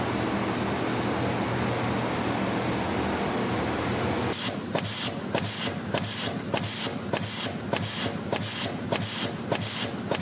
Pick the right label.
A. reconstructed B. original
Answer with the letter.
B